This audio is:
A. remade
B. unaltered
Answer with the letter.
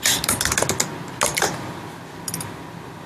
B